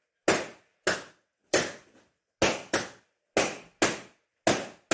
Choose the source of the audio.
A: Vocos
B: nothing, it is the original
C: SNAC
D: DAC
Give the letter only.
B